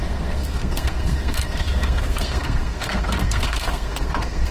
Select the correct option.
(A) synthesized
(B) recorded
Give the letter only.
A